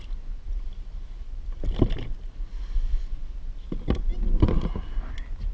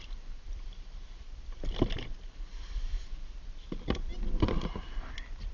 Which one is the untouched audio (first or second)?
first